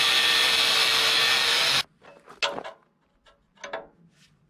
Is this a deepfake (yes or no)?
no